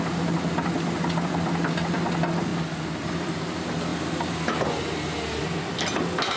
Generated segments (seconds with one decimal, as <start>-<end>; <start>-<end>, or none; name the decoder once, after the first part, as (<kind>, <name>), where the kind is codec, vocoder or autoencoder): none